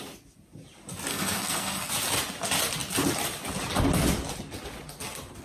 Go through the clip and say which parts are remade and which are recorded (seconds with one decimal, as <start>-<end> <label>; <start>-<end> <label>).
0.0-1.1 recorded; 1.1-1.9 remade; 1.9-5.4 recorded